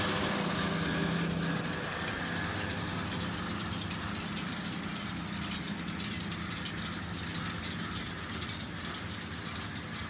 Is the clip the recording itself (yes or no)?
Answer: yes